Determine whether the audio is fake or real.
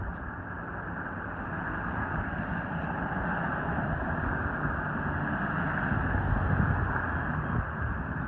real